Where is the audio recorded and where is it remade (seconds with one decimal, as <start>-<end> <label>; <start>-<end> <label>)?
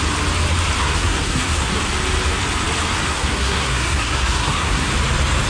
0.0-0.8 recorded; 0.8-1.7 remade; 1.7-3.1 recorded; 3.1-4.9 remade; 4.9-5.5 recorded